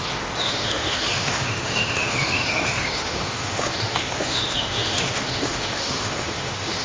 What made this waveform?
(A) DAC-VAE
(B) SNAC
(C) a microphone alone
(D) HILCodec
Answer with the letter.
A